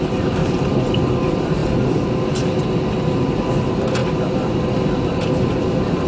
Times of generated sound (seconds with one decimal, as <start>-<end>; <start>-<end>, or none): 0.4-1.1